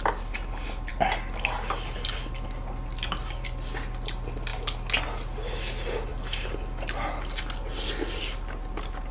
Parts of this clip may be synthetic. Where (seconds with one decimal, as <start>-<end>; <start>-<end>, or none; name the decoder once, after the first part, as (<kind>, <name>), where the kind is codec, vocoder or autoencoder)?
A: none